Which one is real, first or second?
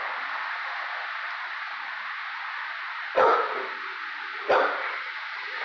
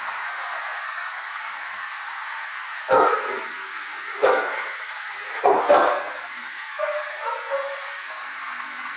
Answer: first